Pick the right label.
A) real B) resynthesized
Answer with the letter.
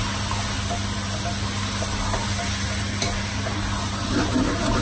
A